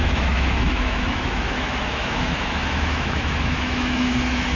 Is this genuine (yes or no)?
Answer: no